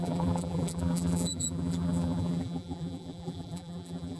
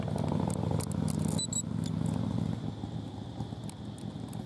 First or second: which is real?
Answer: second